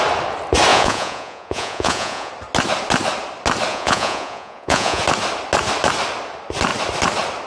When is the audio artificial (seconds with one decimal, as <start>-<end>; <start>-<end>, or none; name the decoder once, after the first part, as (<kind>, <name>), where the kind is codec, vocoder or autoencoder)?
0.7-2.3 (vocoder, Vocos); 3.7-5.0